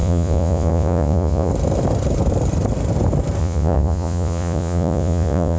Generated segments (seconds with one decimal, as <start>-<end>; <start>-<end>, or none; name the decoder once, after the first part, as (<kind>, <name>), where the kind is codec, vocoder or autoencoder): 0.0-1.5 (vocoder, Vocos); 3.4-5.6